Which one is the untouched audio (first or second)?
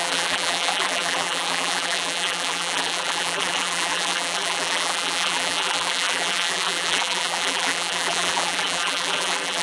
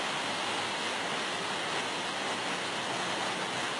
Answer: second